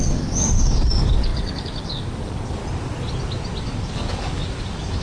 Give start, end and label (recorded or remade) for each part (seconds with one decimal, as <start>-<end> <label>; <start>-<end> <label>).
0.0-2.6 remade; 2.6-3.6 recorded; 3.6-5.0 remade